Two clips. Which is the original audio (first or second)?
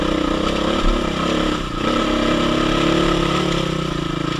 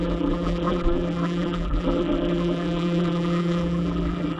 first